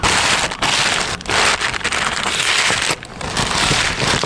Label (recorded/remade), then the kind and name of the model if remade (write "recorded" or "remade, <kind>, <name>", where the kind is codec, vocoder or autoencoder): recorded